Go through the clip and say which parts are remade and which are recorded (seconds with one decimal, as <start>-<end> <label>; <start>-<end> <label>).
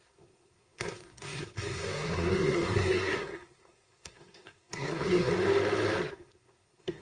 0.0-5.3 remade; 5.3-6.1 recorded; 6.1-7.0 remade